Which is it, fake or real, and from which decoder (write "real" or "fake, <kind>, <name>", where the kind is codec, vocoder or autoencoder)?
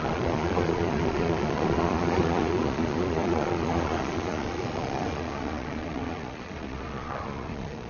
fake, vocoder, Vocos